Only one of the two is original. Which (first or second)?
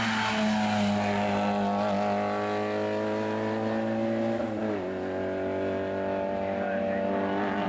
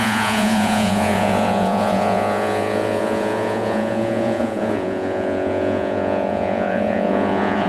first